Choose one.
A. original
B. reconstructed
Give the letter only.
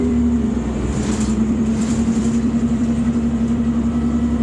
B